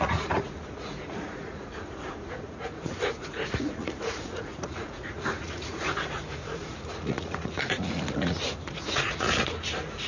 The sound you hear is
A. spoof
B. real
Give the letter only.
A